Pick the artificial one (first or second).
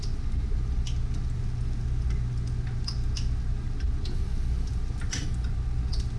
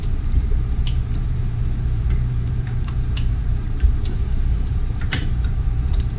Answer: second